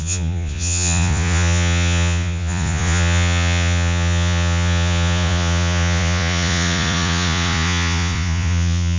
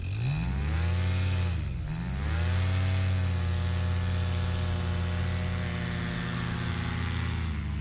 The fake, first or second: first